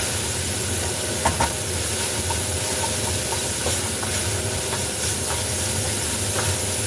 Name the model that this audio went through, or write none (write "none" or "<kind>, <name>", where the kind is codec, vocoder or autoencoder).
none